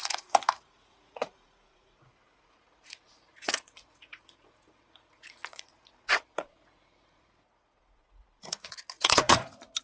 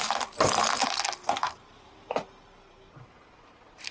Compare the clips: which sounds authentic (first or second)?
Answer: second